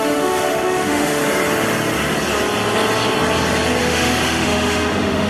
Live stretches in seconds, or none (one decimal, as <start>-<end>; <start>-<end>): 1.2-3.8